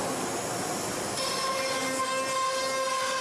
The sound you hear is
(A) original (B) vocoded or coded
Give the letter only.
A